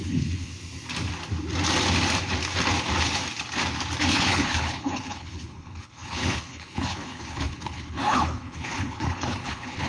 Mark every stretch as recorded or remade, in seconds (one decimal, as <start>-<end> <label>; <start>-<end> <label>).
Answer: 0.0-0.5 remade; 0.5-4.1 recorded; 4.1-9.9 remade